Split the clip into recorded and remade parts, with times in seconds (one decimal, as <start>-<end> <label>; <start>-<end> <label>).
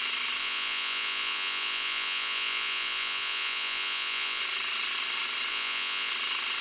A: 0.0-0.4 recorded; 0.4-4.4 remade; 4.4-5.5 recorded; 5.5-6.1 remade; 6.1-6.6 recorded